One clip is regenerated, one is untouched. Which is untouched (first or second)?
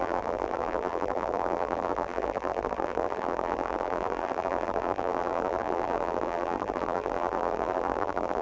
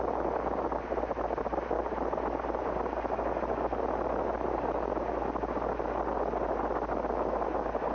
second